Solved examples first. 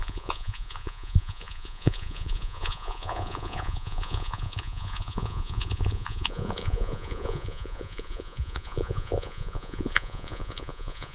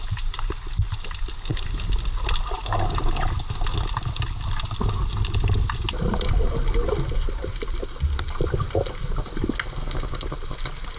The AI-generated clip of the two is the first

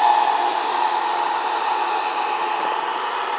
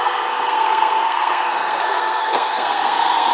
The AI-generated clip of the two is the second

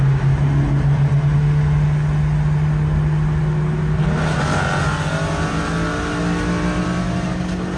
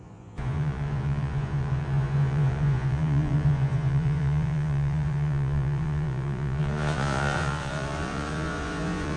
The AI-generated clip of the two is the second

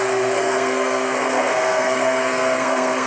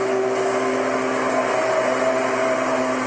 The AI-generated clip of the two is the first